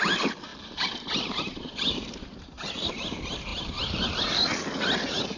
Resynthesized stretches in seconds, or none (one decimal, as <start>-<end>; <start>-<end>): 0.5-2.9; 3.5-4.1